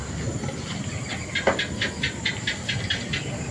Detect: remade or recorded recorded